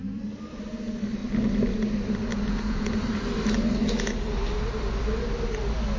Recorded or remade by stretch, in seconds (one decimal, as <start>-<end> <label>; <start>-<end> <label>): 0.0-2.3 recorded; 2.3-2.9 remade; 2.9-6.0 recorded